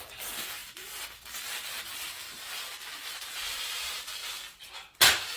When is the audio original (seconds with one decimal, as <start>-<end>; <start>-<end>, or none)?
0.0-5.4